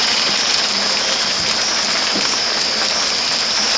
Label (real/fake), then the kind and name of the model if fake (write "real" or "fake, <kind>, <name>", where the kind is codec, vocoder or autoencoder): real